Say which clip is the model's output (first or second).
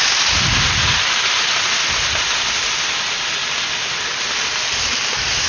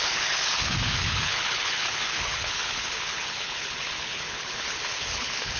second